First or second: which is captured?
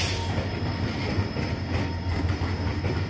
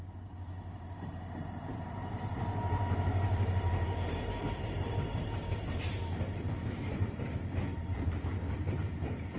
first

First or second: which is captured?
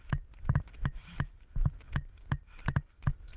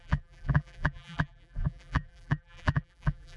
first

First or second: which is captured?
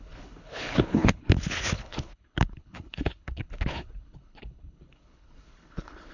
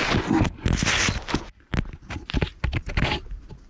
second